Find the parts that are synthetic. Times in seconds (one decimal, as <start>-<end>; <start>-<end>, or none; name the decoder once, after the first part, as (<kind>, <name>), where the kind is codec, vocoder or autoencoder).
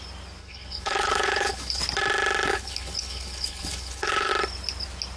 0.4-1.8 (codec, HILCodec); 2.5-4.3